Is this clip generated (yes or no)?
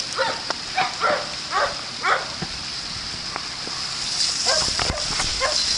no